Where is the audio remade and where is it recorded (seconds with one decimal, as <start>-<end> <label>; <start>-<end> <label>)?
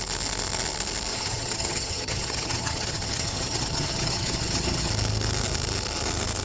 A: 0.0-1.1 recorded; 1.1-4.9 remade; 4.9-6.4 recorded